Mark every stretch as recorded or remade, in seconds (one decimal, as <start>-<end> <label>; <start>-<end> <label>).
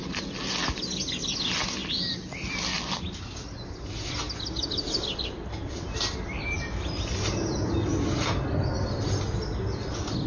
0.0-10.3 recorded